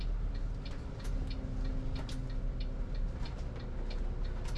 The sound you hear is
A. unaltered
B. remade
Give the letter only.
A